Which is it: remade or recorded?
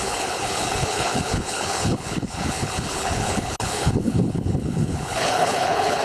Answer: remade